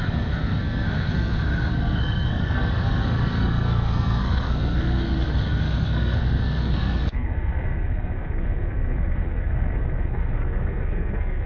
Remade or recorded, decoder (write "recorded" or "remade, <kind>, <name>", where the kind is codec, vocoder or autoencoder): remade, codec, SNAC